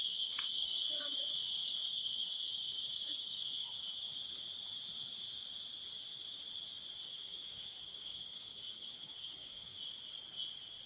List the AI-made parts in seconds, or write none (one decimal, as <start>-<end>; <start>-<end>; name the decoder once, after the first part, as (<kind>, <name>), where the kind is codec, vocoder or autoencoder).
0.0-4.1 (codec, DAC); 7.1-9.8